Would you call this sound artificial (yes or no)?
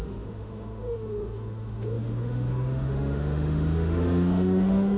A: yes